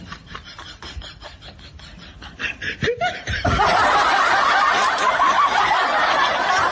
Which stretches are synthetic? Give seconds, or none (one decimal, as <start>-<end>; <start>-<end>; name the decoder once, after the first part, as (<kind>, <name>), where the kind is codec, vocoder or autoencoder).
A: 3.7-5.2 (vocoder, BigVGAN v2)